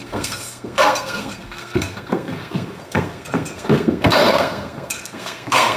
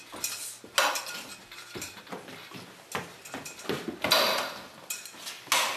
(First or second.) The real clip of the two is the second